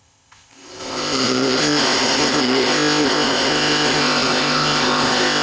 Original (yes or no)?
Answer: no